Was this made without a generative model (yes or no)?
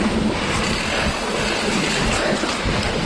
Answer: yes